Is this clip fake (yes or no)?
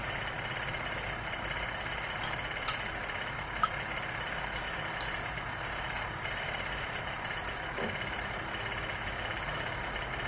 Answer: no